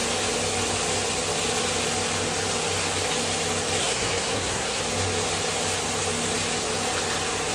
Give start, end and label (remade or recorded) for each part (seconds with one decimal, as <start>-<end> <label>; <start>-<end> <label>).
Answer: 0.0-3.8 recorded; 3.8-4.8 remade; 4.8-7.5 recorded